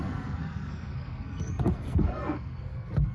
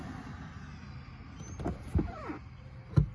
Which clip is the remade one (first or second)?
first